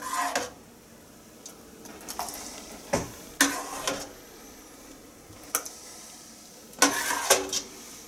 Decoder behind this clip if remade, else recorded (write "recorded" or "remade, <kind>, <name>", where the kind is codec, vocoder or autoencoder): recorded